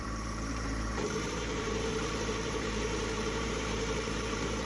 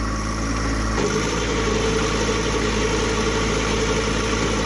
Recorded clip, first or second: second